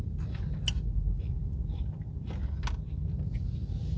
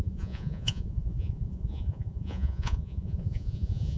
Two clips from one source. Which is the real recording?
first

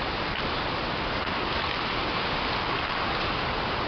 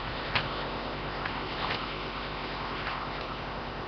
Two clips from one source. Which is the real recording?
first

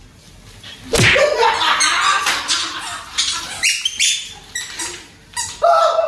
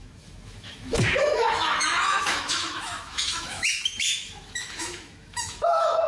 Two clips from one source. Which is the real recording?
first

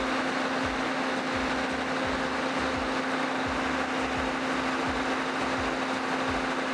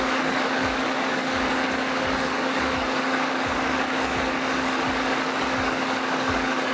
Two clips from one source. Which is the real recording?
first